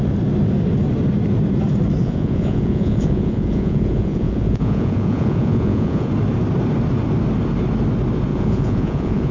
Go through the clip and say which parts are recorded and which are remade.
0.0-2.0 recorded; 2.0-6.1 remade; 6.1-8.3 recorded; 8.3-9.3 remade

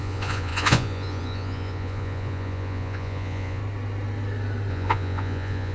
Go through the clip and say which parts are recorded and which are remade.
0.0-3.6 remade; 3.6-4.7 recorded; 4.7-5.7 remade

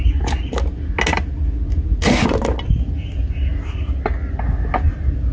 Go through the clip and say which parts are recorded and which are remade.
0.0-5.3 recorded

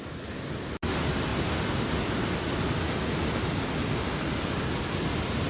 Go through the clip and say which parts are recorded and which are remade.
0.0-5.5 recorded